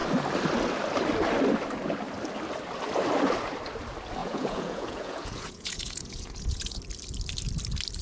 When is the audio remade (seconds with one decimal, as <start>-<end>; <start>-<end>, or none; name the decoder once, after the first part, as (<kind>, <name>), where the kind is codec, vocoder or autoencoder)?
4.2-6.8 (vocoder, Vocos)